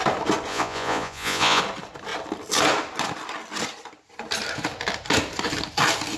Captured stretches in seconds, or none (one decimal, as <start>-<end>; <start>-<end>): 0.0-0.5; 1.6-6.2